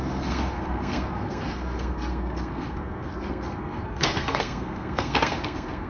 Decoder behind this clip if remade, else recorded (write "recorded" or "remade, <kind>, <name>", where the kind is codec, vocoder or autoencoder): remade, codec, SNAC